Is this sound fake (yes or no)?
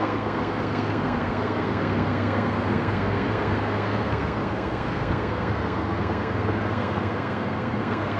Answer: yes